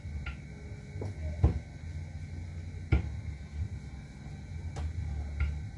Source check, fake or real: real